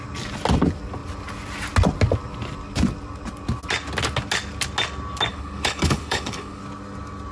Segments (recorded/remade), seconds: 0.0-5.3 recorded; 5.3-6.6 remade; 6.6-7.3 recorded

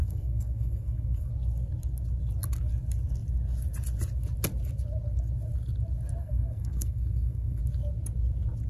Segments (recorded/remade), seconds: 0.0-1.3 remade; 1.3-6.2 recorded; 6.2-7.6 remade; 7.6-8.7 recorded

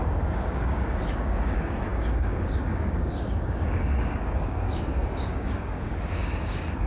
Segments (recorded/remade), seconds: 0.0-6.9 remade

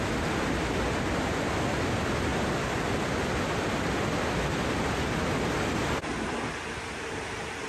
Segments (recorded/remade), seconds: 0.0-7.7 recorded

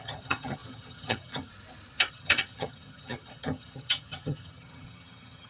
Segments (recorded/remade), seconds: 0.0-1.5 remade; 1.5-2.1 recorded; 2.1-5.5 remade